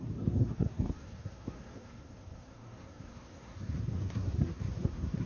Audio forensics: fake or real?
fake